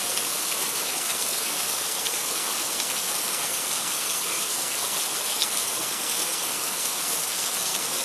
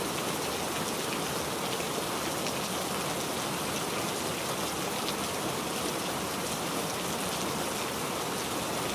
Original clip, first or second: second